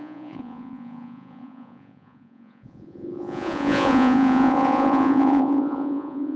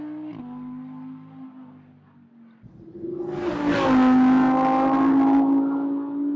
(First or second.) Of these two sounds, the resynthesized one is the first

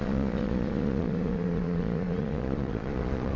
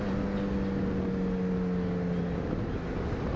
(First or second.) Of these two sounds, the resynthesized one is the first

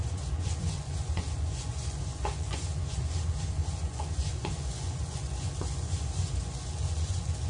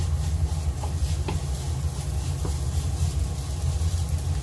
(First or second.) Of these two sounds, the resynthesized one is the first